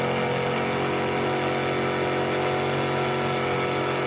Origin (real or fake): real